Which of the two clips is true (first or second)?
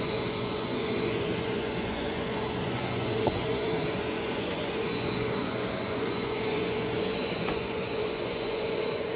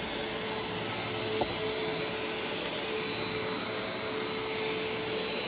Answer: second